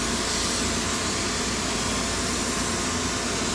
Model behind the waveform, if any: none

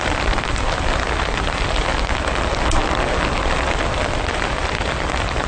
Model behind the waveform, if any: none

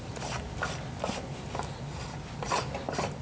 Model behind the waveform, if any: none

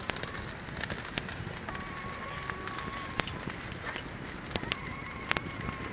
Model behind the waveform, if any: none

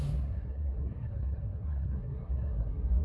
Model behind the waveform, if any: codec, SNAC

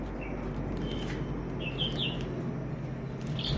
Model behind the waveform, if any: none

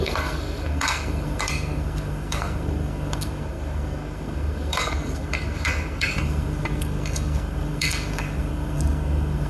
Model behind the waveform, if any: codec, SNAC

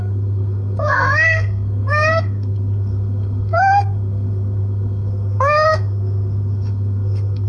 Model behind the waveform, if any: codec, SNAC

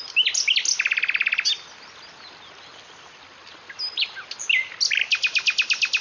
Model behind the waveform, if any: none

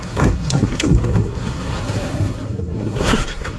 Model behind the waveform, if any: codec, SNAC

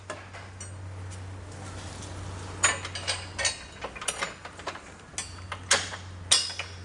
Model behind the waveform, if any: none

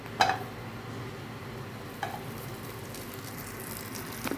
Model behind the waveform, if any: none